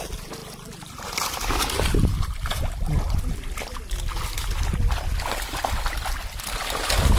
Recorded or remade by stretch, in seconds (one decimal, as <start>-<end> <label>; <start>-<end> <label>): 0.0-7.2 recorded